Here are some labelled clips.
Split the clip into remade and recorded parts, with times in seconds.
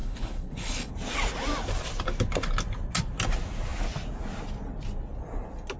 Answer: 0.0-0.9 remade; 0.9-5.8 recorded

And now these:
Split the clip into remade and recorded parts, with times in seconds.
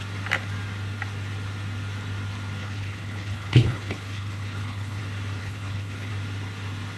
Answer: 0.0-2.6 recorded; 2.6-5.0 remade; 5.0-5.4 recorded; 5.4-6.1 remade; 6.1-7.0 recorded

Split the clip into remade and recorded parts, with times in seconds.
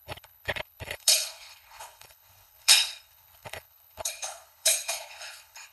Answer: 0.0-5.7 remade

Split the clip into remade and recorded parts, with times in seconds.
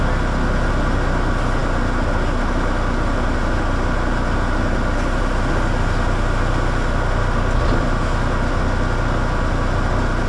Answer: 0.0-10.3 recorded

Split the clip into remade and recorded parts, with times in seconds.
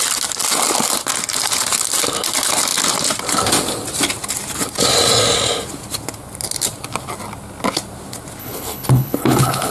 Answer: 0.0-8.4 recorded; 8.4-9.7 remade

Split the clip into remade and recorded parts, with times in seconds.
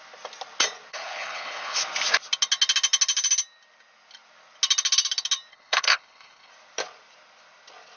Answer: 0.0-0.9 recorded; 0.9-1.8 remade; 1.8-5.5 recorded; 5.5-6.5 remade; 6.5-8.0 recorded